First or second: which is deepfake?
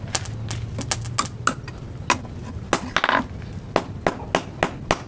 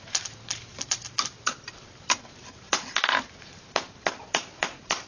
second